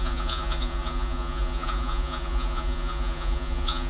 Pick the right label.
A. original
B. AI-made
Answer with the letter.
B